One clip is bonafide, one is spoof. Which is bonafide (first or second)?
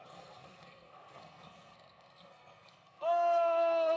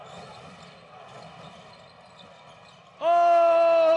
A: second